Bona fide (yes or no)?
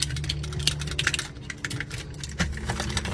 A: yes